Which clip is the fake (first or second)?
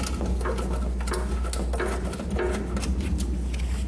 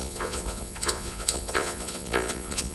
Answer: second